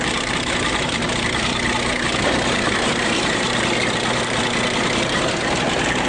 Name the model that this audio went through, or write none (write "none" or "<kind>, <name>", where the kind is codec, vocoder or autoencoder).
vocoder, BigVGAN v2